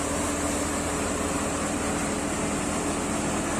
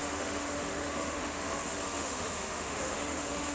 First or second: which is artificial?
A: second